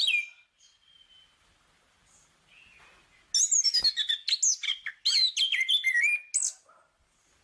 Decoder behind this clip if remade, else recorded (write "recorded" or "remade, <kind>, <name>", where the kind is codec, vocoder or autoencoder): recorded